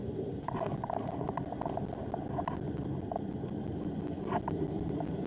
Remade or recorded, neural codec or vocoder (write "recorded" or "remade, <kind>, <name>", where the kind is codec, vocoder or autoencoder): recorded